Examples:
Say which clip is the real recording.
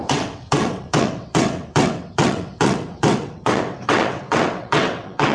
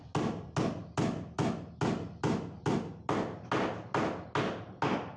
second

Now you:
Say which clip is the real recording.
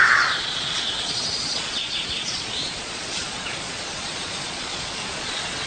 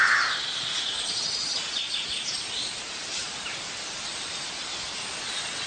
second